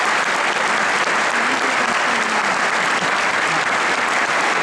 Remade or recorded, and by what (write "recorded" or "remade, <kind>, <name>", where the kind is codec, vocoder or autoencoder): recorded